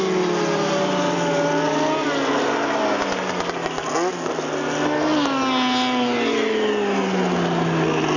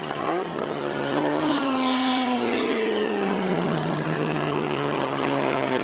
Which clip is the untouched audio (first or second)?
first